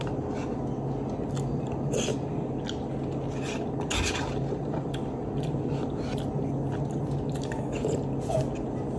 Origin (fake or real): real